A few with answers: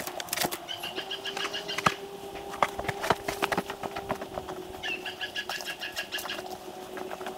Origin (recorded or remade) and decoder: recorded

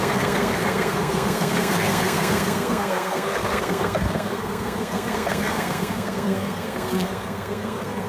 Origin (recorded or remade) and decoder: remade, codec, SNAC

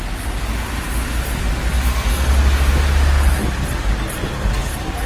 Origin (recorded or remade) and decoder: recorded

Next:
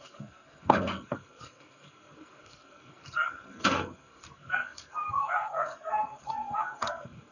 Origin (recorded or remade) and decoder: remade, codec, SNAC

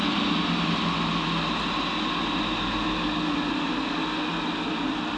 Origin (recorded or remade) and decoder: recorded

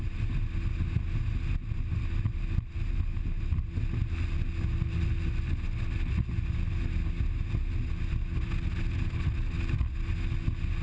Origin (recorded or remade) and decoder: recorded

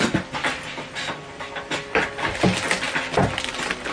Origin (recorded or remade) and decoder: recorded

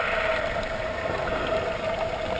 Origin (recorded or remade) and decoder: recorded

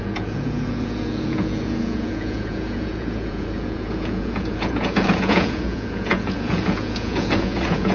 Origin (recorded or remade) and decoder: remade, vocoder, Vocos